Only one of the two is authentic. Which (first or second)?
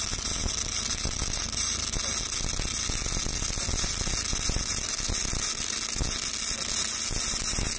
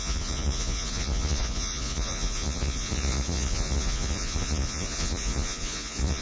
first